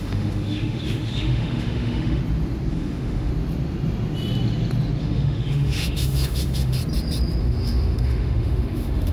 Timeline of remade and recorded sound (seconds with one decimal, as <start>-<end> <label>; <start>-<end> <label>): 0.0-2.2 remade; 2.2-2.7 recorded; 2.7-3.3 remade; 3.3-5.0 recorded; 5.0-6.8 remade; 6.8-7.4 recorded; 7.4-9.1 remade